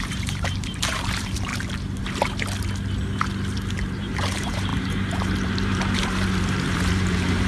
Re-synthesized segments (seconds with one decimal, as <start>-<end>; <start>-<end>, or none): 0.0-1.5; 3.7-7.5